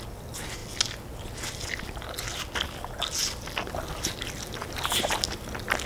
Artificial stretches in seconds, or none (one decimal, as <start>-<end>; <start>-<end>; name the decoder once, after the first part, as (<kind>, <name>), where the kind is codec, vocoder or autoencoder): 4.6-5.1 (vocoder, BigVGAN v2)